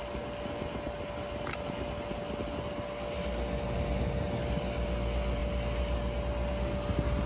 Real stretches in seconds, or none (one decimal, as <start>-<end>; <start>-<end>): 0.0-7.3